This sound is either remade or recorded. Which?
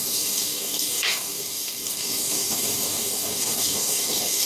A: remade